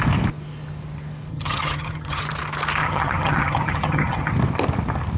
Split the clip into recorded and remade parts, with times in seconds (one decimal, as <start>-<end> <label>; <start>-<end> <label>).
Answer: 0.0-1.3 recorded; 1.3-2.2 remade; 2.2-2.8 recorded; 2.8-4.3 remade; 4.3-5.2 recorded